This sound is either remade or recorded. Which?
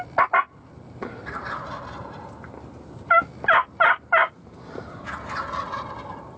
recorded